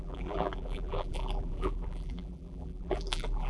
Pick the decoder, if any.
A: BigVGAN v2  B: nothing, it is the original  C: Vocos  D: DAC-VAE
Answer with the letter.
A